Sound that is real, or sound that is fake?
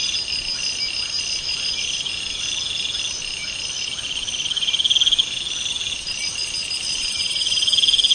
real